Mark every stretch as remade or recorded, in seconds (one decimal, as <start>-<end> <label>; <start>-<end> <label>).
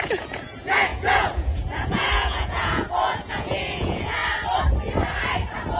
0.0-4.2 remade; 4.2-5.8 recorded